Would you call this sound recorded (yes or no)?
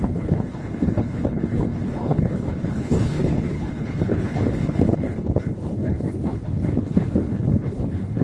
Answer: no